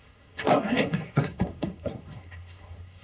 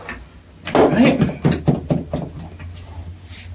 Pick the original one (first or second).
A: second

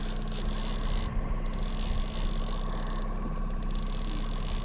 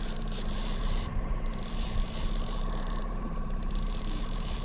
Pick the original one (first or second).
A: first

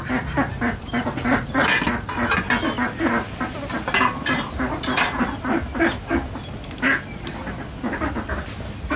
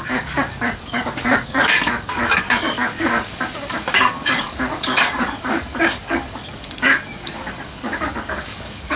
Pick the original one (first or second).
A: first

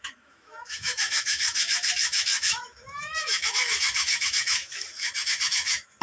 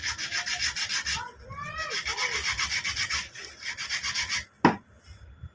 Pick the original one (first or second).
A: second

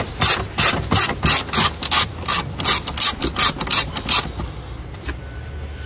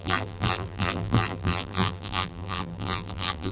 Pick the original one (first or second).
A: first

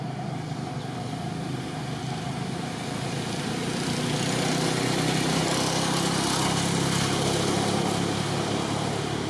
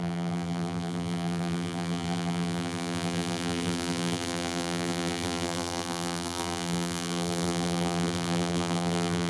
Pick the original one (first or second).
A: first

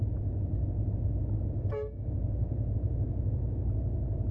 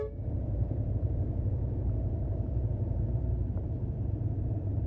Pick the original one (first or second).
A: first